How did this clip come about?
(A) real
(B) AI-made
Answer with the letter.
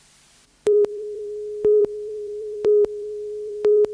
B